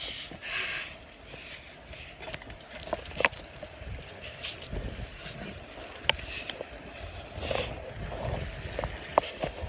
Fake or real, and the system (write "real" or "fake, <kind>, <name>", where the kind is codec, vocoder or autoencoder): real